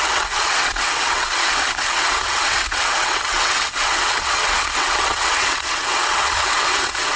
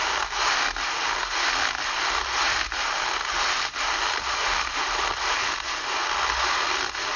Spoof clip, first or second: first